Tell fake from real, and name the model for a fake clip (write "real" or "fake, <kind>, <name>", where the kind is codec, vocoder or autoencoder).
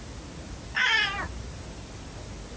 real